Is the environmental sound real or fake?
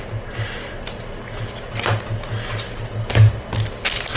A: real